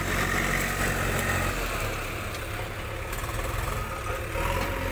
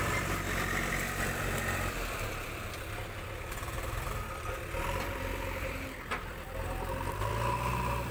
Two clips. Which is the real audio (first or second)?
first